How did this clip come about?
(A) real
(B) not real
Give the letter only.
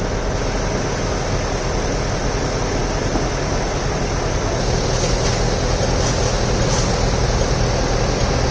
A